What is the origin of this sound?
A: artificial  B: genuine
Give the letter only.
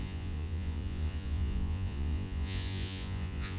A